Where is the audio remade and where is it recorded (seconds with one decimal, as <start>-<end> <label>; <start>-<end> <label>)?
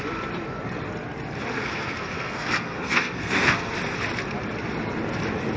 0.0-1.5 recorded; 1.5-3.7 remade; 3.7-5.6 recorded